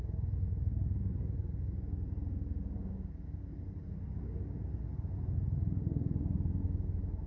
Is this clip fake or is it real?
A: real